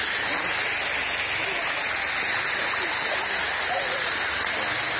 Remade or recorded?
recorded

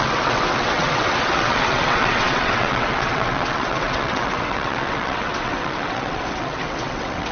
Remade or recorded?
remade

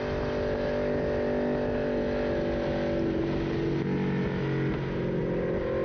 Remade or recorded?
recorded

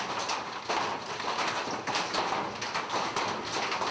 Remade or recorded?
recorded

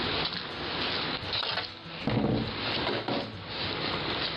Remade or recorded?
recorded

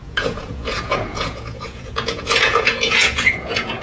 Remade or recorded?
remade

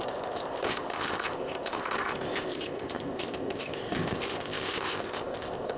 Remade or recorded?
remade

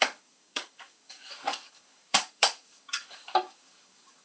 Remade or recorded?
remade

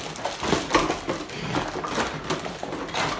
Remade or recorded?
recorded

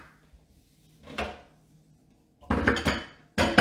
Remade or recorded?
recorded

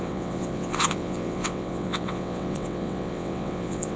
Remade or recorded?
remade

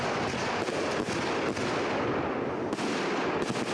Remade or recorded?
recorded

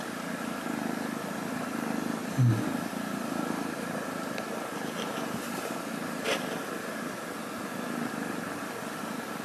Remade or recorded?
recorded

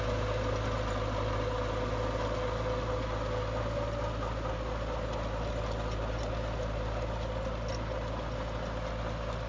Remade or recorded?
recorded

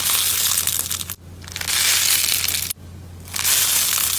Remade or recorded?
recorded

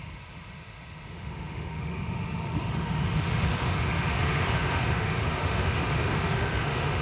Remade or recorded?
remade